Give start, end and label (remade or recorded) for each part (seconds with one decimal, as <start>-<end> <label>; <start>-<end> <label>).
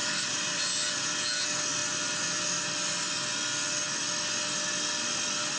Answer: 0.0-0.6 remade; 0.6-5.6 recorded